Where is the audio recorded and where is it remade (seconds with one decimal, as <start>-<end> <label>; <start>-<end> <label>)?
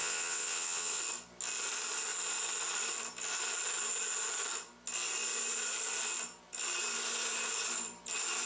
0.0-1.0 remade; 1.0-8.5 recorded